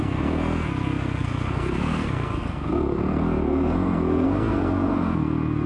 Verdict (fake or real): fake